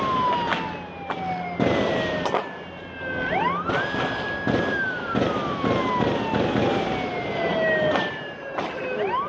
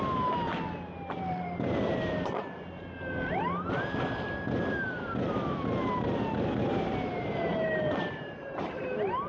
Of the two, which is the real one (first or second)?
first